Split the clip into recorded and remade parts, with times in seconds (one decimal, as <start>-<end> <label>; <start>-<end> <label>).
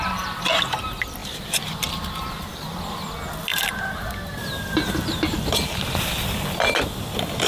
0.0-7.5 recorded